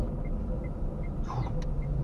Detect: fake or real real